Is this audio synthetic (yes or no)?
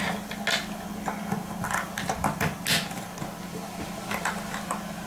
no